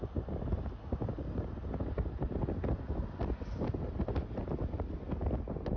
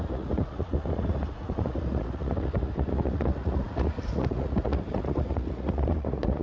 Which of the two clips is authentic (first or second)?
first